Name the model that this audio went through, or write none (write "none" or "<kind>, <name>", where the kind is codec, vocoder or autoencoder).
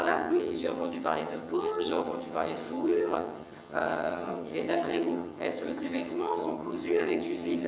vocoder, HiFi-GAN